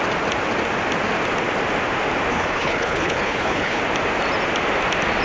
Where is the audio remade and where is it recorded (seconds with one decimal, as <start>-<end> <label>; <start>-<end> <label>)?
0.0-2.3 recorded; 2.3-3.8 remade; 3.8-5.2 recorded

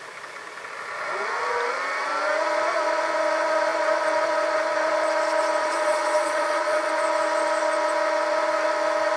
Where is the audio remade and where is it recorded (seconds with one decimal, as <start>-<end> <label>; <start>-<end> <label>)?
0.0-5.6 recorded; 5.6-6.9 remade; 6.9-9.2 recorded

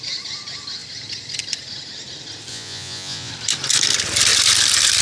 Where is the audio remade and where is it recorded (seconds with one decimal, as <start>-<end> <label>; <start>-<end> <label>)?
0.0-2.5 recorded; 2.5-3.3 remade; 3.3-5.0 recorded

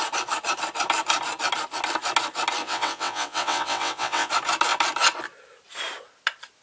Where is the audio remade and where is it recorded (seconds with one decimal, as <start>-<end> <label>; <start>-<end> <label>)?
0.0-2.6 recorded; 2.6-4.3 remade; 4.3-6.6 recorded

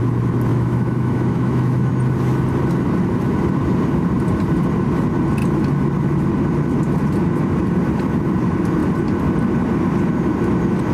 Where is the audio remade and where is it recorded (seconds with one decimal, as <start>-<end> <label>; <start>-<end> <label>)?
0.0-0.5 recorded; 0.5-1.9 remade; 1.9-10.9 recorded

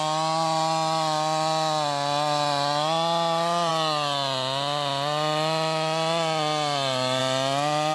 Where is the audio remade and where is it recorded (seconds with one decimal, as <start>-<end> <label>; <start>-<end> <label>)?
0.0-7.9 recorded

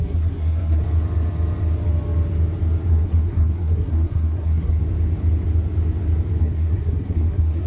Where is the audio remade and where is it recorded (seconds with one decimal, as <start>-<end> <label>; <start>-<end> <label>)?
0.0-0.8 remade; 0.8-2.9 recorded; 2.9-4.8 remade; 4.8-6.4 recorded; 6.4-7.7 remade

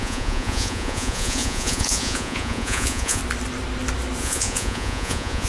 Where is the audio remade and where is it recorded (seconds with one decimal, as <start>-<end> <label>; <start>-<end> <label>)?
0.0-3.2 remade; 3.2-4.2 recorded; 4.2-5.5 remade